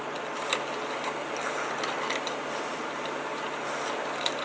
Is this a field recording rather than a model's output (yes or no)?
yes